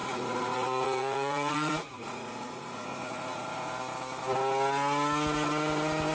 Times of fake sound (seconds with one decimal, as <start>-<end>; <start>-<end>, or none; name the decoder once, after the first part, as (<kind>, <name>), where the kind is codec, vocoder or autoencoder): 0.0-3.7 (vocoder, Vocos)